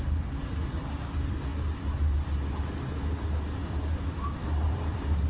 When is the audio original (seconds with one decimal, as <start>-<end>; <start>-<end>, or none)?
0.0-5.3